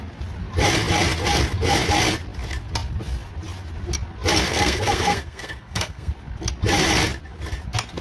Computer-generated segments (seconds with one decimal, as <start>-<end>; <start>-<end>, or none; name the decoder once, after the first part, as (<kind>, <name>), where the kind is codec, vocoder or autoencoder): 4.5-6.1 (codec, SNAC)